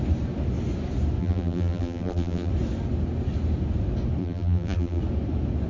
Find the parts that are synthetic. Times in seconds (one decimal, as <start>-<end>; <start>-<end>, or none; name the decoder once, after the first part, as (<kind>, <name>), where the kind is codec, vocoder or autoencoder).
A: 1.2-2.5 (vocoder, BigVGAN v2); 4.2-5.0